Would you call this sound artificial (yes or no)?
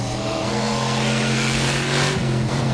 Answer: yes